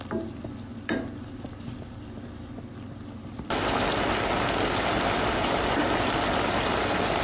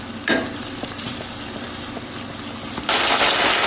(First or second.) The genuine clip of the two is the second